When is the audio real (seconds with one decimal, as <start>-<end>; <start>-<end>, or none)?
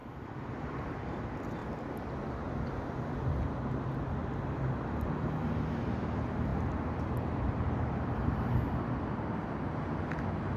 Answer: 1.0-6.5; 8.5-10.6